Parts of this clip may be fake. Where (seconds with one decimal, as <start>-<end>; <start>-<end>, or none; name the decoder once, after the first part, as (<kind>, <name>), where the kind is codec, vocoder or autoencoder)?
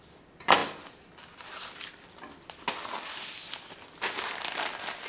none